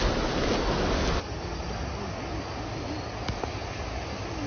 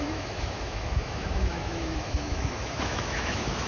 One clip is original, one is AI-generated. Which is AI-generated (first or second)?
second